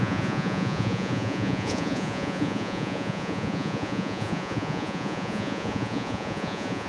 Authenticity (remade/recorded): remade